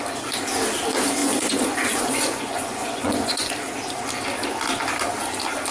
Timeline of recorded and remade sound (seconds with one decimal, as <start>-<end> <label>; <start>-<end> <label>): 0.0-1.2 recorded; 1.2-3.5 remade; 3.5-5.7 recorded